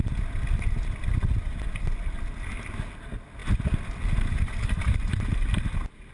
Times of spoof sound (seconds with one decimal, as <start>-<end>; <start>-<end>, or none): none